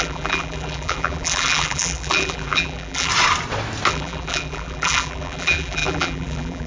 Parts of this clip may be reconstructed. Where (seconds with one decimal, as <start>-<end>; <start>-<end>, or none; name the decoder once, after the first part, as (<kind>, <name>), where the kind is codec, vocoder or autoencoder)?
0.0-3.1 (vocoder, BigVGAN v2); 3.9-6.7